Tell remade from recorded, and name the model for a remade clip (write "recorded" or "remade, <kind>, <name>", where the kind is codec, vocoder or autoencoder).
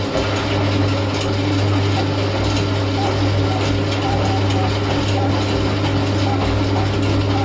recorded